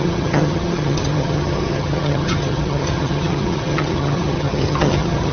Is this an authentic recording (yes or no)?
no